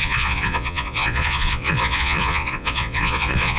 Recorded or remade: remade